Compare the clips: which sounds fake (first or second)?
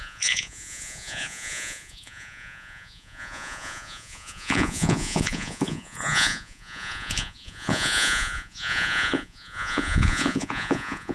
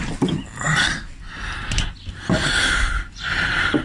first